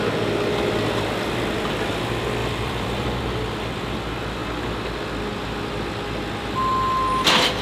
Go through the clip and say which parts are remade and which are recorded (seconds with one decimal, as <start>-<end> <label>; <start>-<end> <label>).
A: 0.0-2.4 recorded; 2.4-3.2 remade; 3.2-7.6 recorded